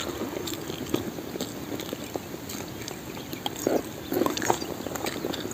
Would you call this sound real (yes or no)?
yes